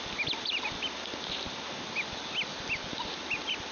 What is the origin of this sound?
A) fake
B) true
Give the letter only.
B